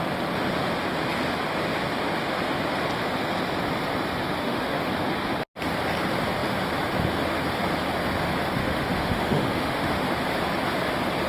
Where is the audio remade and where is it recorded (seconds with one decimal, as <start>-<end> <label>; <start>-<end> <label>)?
0.0-4.4 recorded; 4.4-4.9 remade; 4.9-8.6 recorded; 8.6-10.1 remade; 10.1-11.3 recorded